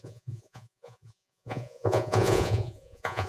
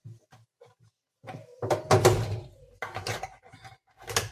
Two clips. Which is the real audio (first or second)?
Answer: second